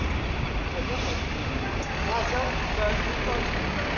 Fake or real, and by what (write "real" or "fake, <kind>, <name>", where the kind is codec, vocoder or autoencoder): real